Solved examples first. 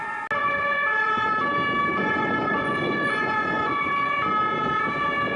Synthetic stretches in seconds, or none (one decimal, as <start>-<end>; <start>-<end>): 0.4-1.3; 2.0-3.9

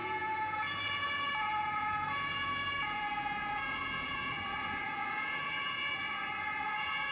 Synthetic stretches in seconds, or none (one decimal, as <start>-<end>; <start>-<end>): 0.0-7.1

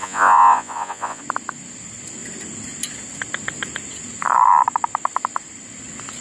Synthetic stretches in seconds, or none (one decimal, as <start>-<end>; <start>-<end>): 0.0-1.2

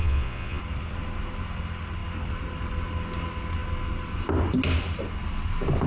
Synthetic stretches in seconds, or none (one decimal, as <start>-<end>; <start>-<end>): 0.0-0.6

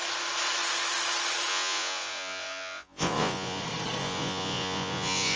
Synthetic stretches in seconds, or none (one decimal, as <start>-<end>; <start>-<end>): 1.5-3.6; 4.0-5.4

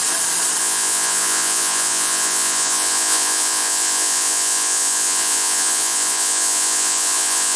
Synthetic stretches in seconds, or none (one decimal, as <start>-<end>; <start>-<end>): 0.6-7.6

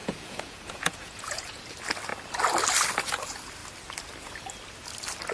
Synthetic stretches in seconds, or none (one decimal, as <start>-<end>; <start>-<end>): 0.0-1.6

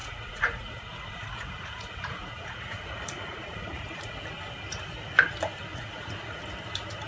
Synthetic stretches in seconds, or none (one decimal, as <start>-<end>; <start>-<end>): 0.0-4.1; 5.7-6.4